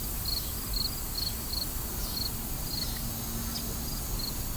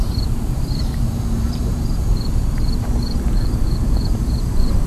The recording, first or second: first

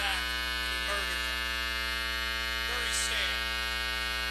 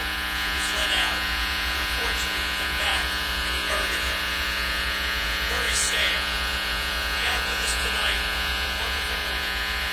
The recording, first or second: first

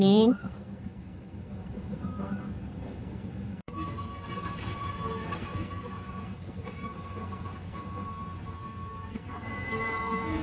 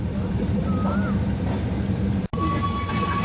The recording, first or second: second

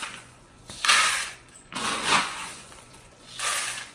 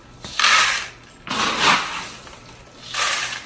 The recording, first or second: second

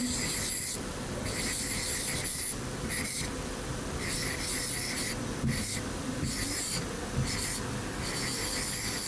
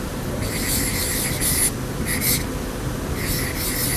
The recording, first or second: second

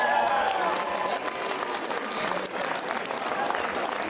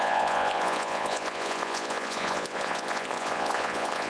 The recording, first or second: first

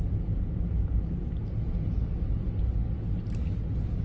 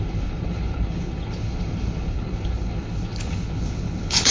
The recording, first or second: first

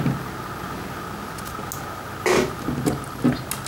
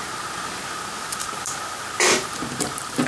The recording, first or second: first